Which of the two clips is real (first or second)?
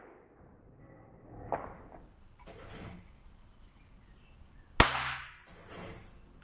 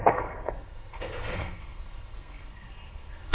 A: first